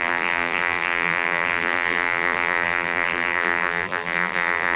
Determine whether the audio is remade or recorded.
remade